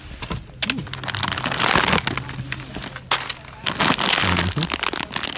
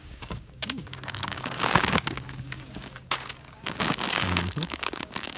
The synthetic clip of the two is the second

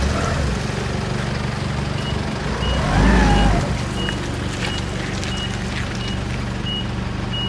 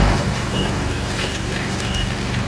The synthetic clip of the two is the second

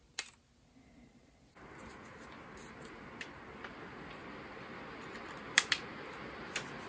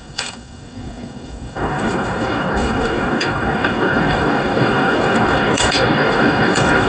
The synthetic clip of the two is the second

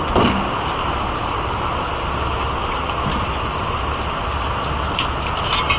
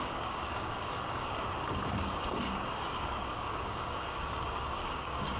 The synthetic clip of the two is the second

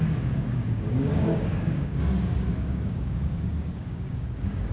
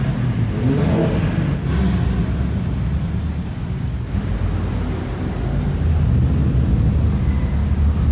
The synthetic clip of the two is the first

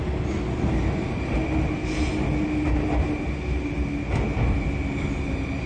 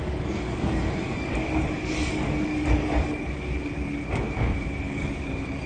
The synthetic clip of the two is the second